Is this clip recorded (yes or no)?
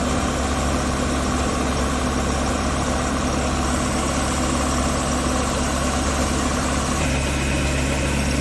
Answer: yes